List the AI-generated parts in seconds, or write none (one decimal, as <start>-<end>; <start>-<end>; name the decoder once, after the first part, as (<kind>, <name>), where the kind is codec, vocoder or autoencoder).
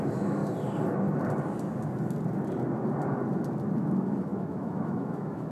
0.0-0.4 (autoencoder, DAC-VAE); 3.7-5.5